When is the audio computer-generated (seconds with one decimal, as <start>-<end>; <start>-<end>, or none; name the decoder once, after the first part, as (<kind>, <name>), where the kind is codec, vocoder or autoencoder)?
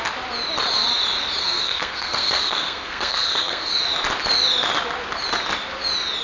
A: 1.4-3.7 (codec, SNAC)